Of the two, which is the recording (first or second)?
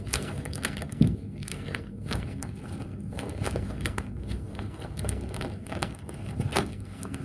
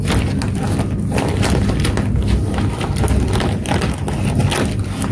second